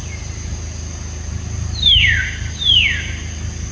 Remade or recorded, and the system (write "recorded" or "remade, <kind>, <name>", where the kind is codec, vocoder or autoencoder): recorded